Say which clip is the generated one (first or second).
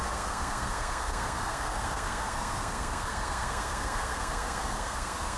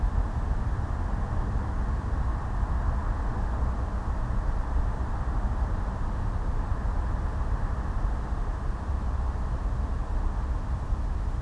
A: first